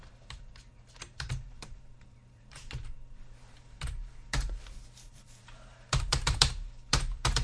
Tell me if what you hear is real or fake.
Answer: fake